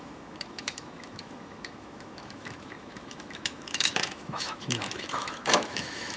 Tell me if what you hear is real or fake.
fake